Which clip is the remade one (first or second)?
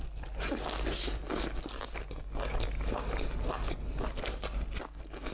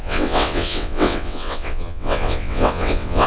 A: second